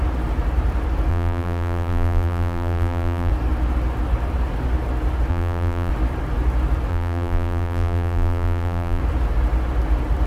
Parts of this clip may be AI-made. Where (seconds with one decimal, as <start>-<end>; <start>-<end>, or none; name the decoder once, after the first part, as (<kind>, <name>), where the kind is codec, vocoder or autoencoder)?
1.1-3.3 (vocoder, BigVGAN v2); 5.3-5.9; 6.9-9.0